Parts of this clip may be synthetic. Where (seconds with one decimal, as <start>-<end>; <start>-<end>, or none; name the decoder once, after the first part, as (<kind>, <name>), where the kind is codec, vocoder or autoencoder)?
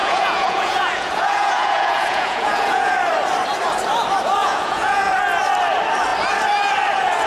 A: 0.0-2.9 (vocoder, Vocos); 4.4-5.1